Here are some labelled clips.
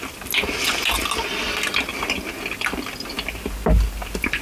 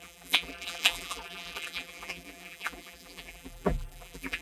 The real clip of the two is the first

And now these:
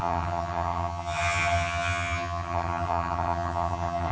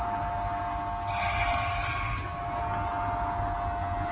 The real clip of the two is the second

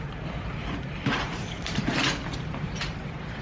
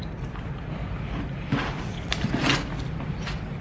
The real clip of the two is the second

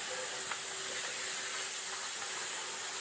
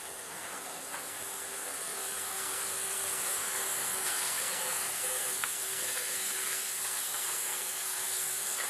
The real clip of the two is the first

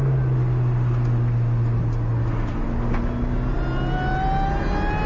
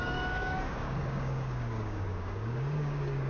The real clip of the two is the first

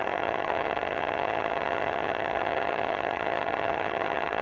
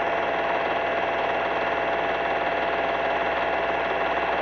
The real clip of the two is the second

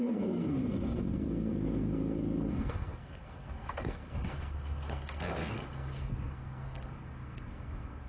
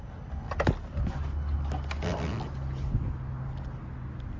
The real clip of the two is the second